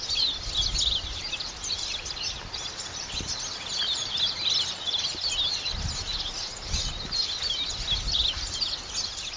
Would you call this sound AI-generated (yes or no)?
no